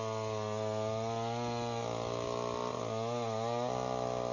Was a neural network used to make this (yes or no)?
no